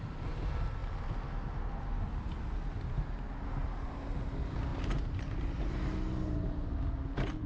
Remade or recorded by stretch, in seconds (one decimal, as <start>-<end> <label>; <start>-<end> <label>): 0.0-7.5 recorded